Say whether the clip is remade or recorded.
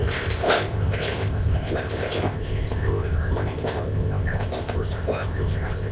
remade